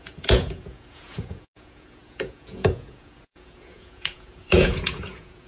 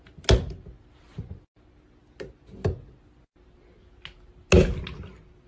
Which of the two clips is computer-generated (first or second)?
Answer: first